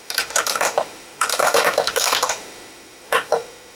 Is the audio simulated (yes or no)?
yes